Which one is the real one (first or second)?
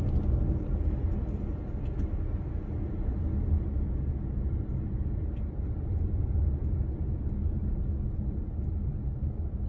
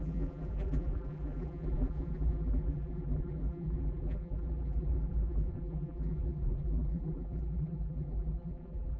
first